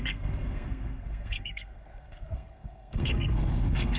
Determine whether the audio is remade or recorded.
remade